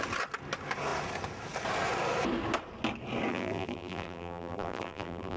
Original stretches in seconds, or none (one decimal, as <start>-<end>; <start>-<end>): 0.0-3.3